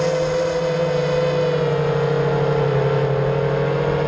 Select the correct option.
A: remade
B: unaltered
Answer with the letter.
B